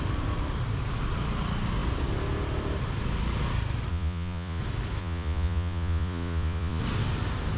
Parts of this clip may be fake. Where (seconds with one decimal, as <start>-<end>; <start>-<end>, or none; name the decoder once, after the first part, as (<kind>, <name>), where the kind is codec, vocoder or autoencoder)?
3.9-4.6 (vocoder, Vocos); 5.0-6.8